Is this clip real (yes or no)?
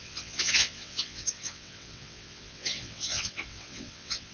no